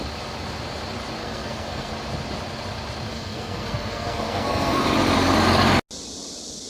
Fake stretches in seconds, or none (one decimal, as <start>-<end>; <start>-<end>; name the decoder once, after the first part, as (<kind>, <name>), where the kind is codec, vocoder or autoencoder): 1.2-1.9 (codec, SNAC); 3.1-4.8